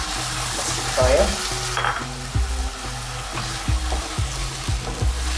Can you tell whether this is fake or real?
real